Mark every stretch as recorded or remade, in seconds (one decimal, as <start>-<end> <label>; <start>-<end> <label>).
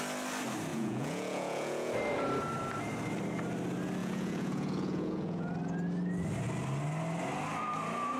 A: 0.0-0.7 recorded; 0.7-1.9 remade; 1.9-4.0 recorded; 4.0-5.5 remade; 5.5-8.2 recorded